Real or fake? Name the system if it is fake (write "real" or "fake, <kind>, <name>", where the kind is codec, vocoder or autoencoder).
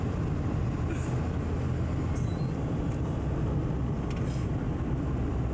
real